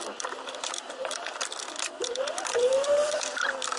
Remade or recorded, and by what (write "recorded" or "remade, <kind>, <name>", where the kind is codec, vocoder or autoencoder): remade, vocoder, BigVGAN v2